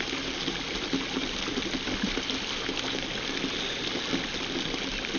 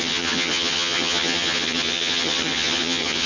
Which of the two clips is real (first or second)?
first